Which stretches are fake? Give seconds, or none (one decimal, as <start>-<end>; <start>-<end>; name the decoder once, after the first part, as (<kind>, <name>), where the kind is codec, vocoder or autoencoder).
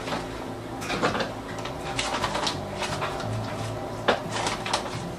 none